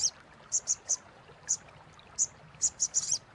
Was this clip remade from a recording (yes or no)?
no